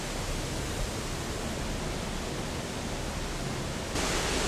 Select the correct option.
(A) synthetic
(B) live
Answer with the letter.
B